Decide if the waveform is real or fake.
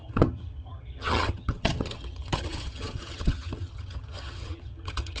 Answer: fake